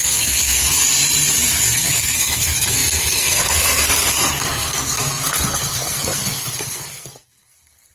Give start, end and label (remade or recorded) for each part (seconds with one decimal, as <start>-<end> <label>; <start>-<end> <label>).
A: 0.0-0.8 remade; 0.8-1.7 recorded; 1.7-7.9 remade

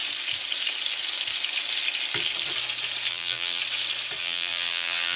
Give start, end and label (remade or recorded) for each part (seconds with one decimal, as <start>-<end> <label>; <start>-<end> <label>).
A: 0.0-3.1 recorded; 3.1-3.6 remade; 3.6-4.2 recorded; 4.2-5.2 remade

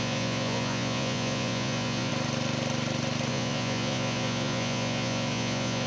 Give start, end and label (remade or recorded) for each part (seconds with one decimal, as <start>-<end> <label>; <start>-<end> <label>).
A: 0.0-2.1 remade; 2.1-3.3 recorded; 3.3-5.9 remade

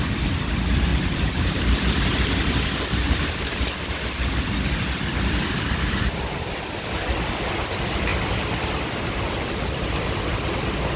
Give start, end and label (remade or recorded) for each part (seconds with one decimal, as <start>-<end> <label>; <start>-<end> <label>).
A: 0.0-11.0 remade

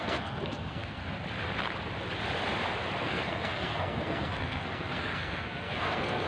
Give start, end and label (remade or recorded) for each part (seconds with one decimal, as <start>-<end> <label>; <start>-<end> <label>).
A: 0.0-1.0 remade; 1.0-3.0 recorded; 3.0-6.3 remade

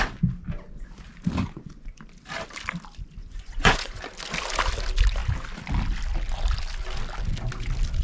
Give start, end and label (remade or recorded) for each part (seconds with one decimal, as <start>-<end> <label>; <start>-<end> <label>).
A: 0.0-1.4 recorded; 1.4-2.0 remade; 2.0-3.2 recorded; 3.2-4.0 remade; 4.0-8.0 recorded

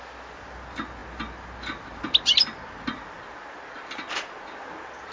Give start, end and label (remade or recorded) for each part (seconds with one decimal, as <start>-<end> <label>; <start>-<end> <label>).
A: 0.0-5.1 recorded